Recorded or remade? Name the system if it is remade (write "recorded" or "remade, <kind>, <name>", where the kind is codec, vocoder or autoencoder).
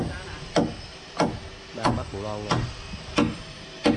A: recorded